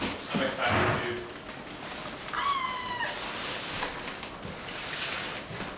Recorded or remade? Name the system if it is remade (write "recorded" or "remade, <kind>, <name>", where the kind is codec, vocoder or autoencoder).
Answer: recorded